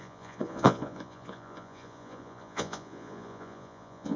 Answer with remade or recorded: remade